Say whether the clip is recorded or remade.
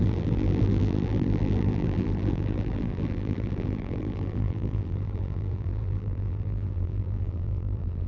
remade